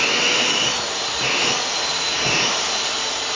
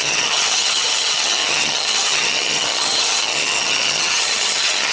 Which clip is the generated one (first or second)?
second